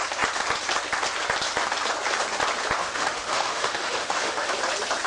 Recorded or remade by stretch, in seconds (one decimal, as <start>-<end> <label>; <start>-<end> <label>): 0.0-2.8 recorded; 2.8-4.5 remade; 4.5-5.1 recorded